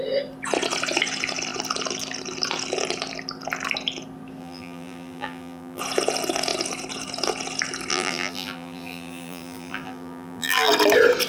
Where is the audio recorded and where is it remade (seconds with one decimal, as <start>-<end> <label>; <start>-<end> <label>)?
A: 0.0-4.4 recorded; 4.4-5.8 remade; 5.8-7.9 recorded; 7.9-10.7 remade; 10.7-11.3 recorded